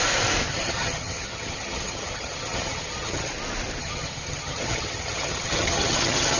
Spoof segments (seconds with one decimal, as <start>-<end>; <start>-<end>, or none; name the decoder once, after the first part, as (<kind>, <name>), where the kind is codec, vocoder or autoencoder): 0.5-3.3 (vocoder, HiFi-GAN); 3.8-6.4